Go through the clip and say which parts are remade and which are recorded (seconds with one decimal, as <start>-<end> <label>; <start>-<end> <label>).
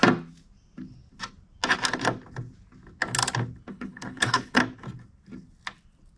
0.0-3.7 recorded; 3.7-4.6 remade; 4.6-6.2 recorded